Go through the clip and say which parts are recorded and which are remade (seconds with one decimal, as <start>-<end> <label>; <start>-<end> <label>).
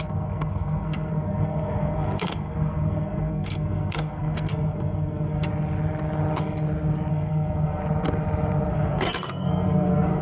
0.0-5.5 remade; 5.5-7.1 recorded; 7.1-7.8 remade; 7.8-8.7 recorded; 8.7-10.2 remade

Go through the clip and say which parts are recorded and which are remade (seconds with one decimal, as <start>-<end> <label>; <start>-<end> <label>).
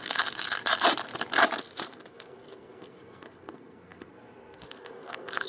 0.0-0.6 remade; 0.6-1.6 recorded; 1.6-5.5 remade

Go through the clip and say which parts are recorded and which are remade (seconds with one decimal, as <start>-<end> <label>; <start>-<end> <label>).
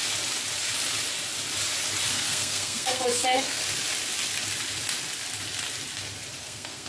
0.0-2.1 recorded; 2.1-3.6 remade; 3.6-6.4 recorded; 6.4-6.9 remade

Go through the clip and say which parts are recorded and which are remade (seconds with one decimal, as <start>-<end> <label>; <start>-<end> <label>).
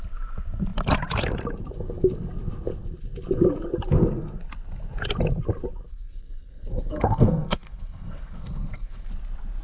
0.0-5.9 recorded; 5.9-9.1 remade; 9.1-9.6 recorded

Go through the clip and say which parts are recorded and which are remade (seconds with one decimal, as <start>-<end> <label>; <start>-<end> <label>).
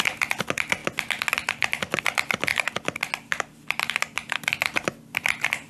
0.0-5.7 recorded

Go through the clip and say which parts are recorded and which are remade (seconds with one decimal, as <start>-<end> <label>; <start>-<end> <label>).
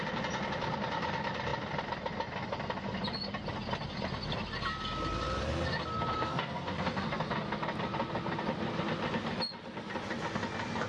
0.0-6.1 recorded; 6.1-7.3 remade; 7.3-10.9 recorded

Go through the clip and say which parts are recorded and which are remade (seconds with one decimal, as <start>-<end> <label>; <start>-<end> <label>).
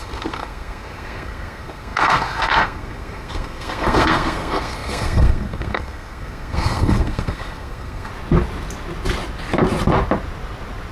0.0-8.1 remade; 8.1-10.9 recorded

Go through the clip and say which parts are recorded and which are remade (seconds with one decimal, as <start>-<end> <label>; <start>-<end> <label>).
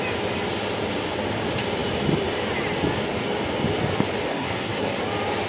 0.0-4.3 recorded; 4.3-5.0 remade; 5.0-5.5 recorded